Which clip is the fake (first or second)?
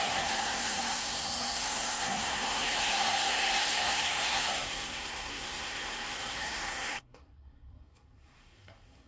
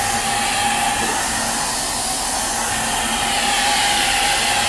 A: first